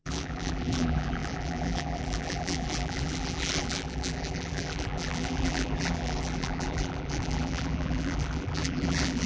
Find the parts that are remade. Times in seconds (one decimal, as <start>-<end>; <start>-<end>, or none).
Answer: 0.0-9.3